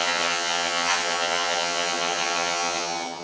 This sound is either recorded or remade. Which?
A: remade